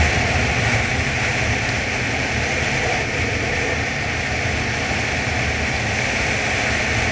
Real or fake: real